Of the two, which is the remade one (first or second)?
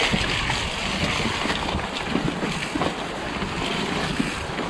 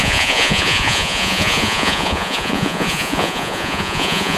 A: second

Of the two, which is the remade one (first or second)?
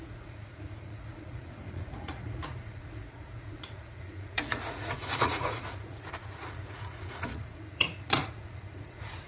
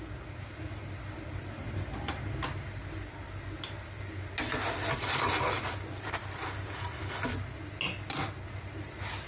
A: first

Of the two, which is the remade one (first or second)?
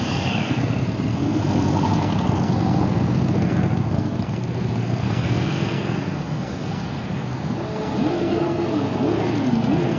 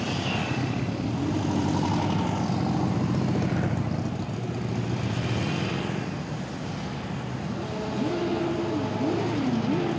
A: first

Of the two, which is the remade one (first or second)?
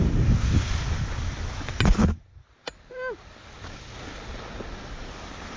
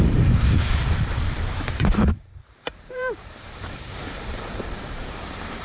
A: second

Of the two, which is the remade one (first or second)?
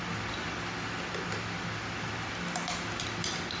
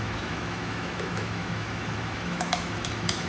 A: second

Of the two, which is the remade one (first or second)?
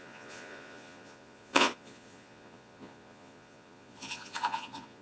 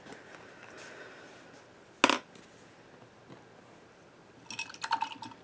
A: first